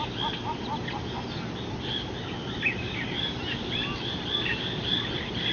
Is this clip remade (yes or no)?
no